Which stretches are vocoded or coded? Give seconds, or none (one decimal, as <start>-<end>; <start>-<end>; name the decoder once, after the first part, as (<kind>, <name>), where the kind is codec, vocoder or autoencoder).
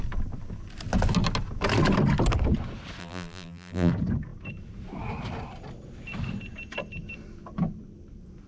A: 3.0-3.9 (vocoder, BigVGAN v2)